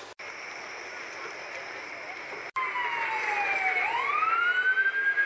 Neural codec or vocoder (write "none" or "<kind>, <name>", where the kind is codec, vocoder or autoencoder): none